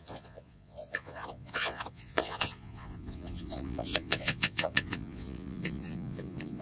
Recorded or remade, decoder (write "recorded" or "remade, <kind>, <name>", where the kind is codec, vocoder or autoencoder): remade, vocoder, Vocos